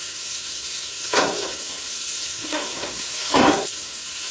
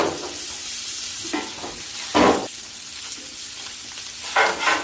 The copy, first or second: first